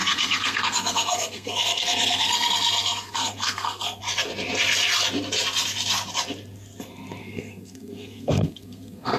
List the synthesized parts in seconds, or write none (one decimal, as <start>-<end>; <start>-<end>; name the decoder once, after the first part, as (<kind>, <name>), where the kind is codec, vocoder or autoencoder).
0.0-4.0 (codec, SNAC); 7.2-9.2